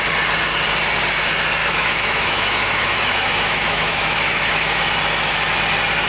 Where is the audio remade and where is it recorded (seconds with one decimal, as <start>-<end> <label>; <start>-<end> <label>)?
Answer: 0.0-1.6 recorded; 1.6-4.8 remade; 4.8-6.1 recorded